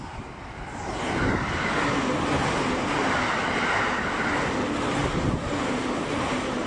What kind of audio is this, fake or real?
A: real